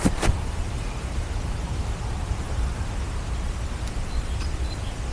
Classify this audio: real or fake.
fake